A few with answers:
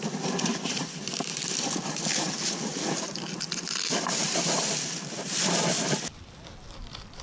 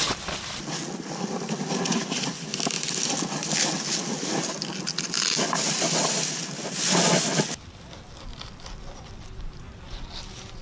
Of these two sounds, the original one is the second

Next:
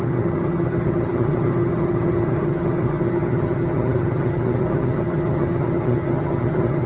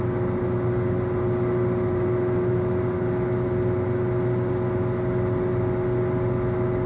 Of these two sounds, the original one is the second